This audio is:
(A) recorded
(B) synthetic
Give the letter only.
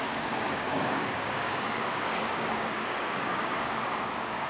B